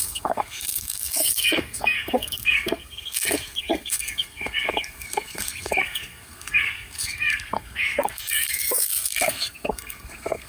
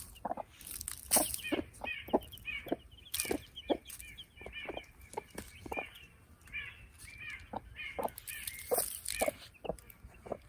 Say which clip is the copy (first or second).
first